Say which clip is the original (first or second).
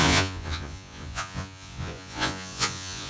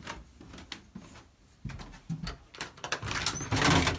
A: second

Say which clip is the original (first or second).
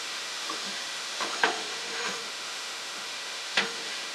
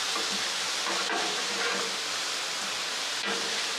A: second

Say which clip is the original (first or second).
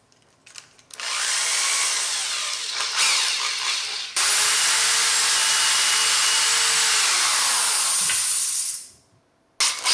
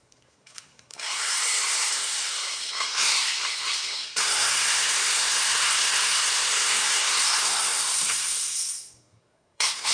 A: first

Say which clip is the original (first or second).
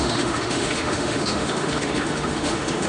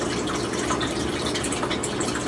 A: second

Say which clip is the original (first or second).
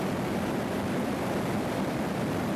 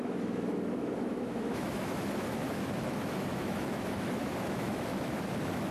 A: first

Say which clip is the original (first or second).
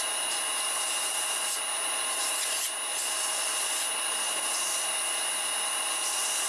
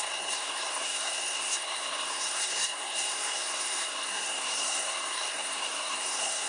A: first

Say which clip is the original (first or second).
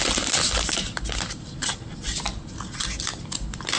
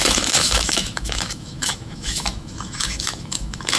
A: first